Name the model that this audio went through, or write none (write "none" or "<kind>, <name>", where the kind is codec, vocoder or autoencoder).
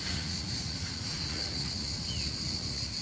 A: vocoder, Vocos